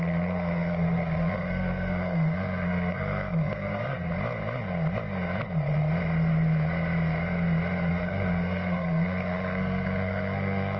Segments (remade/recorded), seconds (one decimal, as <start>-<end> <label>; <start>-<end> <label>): 0.0-4.1 remade; 4.1-7.9 recorded; 7.9-10.8 remade